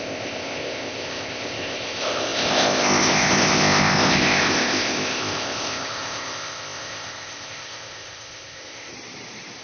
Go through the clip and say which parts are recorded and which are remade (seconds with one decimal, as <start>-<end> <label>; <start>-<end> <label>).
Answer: 0.0-8.9 remade; 8.9-9.6 recorded

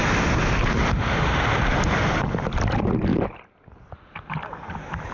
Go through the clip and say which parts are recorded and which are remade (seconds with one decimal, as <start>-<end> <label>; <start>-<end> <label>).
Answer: 0.0-5.1 recorded

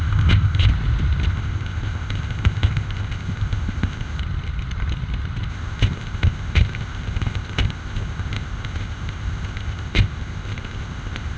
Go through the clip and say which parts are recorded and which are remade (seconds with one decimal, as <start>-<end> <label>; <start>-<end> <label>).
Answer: 0.0-0.7 remade; 0.7-1.3 recorded; 1.3-4.2 remade; 4.2-5.5 recorded; 5.5-11.4 remade

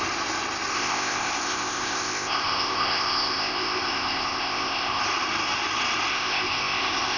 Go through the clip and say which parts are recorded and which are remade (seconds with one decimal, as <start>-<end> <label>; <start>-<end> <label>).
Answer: 0.0-0.7 recorded; 0.7-5.0 remade; 5.0-6.1 recorded; 6.1-7.2 remade

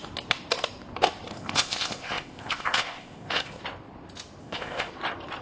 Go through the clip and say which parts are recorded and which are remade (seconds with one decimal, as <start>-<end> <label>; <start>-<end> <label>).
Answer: 0.0-1.3 recorded; 1.3-3.6 remade; 3.6-4.4 recorded; 4.4-4.9 remade; 4.9-5.4 recorded

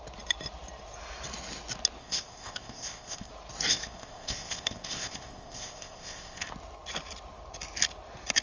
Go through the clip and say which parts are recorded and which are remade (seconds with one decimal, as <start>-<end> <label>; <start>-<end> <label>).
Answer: 0.0-2.0 recorded; 2.0-3.3 remade; 3.3-3.7 recorded; 3.7-6.5 remade; 6.5-8.4 recorded

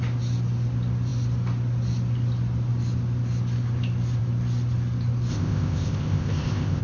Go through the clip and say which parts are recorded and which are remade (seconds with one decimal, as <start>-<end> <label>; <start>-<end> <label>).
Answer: 0.0-5.3 recorded; 5.3-6.8 remade

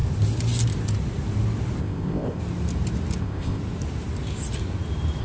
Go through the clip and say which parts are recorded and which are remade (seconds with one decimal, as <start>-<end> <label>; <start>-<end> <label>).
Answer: 0.0-1.8 recorded; 1.8-2.4 remade; 2.4-3.2 recorded; 3.2-3.6 remade; 3.6-5.2 recorded